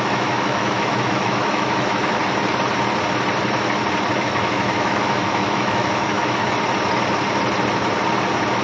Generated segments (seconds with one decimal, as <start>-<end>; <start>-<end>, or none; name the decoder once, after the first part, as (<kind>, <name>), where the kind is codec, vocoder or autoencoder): 0.0-2.2 (autoencoder, DAC-VAE); 4.1-6.4